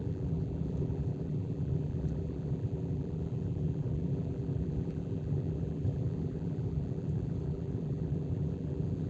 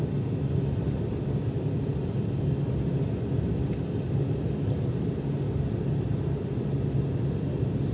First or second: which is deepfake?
first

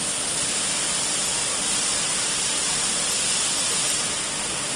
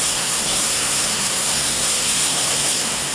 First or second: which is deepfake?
second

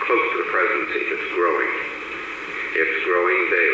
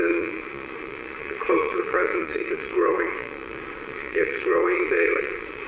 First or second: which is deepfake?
second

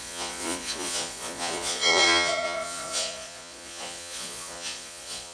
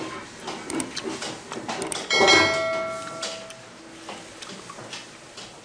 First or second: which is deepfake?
first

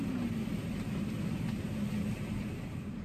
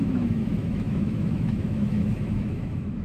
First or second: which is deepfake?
second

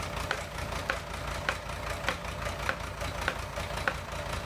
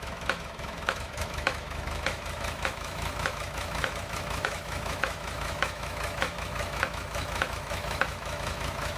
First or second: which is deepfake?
second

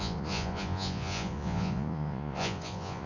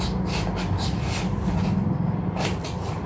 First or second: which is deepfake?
first